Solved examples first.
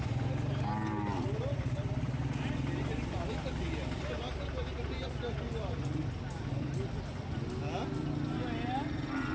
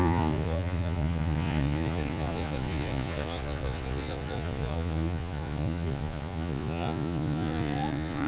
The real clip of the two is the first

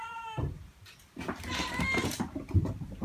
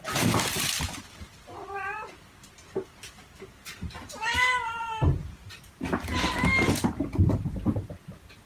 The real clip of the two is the second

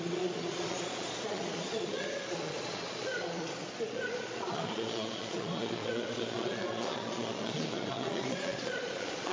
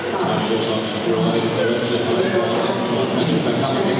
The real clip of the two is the second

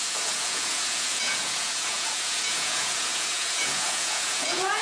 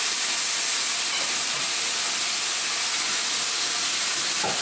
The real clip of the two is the second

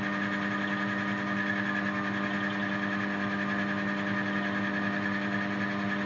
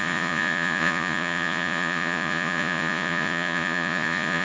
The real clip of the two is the first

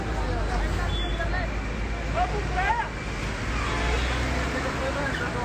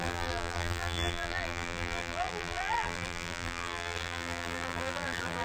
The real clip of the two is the first